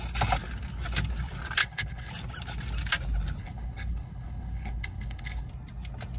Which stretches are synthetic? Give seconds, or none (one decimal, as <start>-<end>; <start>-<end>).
1.6-2.1; 3.4-5.5